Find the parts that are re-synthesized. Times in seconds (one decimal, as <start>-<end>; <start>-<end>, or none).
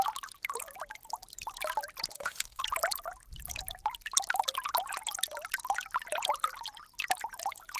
2.1-2.6